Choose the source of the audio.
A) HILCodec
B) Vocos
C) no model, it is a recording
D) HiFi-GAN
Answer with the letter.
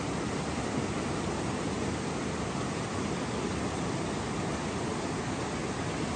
C